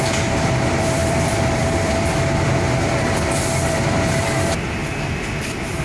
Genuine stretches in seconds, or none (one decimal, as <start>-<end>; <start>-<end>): 4.8-5.8